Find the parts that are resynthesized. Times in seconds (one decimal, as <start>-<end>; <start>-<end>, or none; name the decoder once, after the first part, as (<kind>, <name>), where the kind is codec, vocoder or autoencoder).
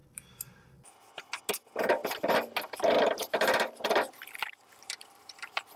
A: 0.0-1.4 (vocoder, BigVGAN v2); 2.0-5.8